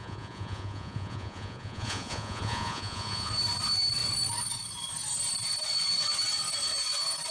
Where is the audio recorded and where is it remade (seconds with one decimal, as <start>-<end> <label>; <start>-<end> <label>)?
0.0-3.3 remade; 3.3-7.3 recorded